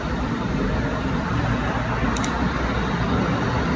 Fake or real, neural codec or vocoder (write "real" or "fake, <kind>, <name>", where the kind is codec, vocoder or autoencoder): real